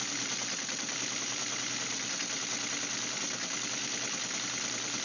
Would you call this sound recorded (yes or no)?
yes